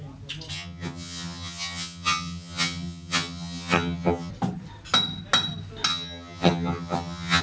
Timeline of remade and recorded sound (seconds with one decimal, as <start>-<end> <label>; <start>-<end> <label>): 0.0-0.5 recorded; 0.5-4.3 remade; 4.3-5.9 recorded; 5.9-7.4 remade